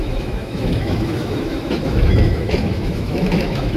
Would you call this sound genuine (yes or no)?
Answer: no